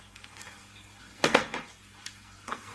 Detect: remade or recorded remade